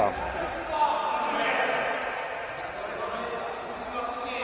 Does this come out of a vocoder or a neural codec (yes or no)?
no